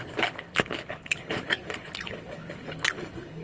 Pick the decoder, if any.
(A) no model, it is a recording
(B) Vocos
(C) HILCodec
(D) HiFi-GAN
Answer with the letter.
C